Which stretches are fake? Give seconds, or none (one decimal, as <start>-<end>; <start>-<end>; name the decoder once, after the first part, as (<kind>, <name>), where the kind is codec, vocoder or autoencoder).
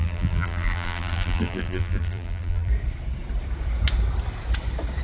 0.0-2.7 (vocoder, BigVGAN v2)